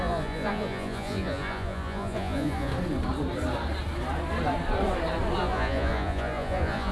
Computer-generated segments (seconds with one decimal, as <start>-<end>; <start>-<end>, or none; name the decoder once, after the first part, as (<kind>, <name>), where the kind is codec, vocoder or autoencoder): 0.0-2.7 (vocoder, Vocos); 5.4-6.9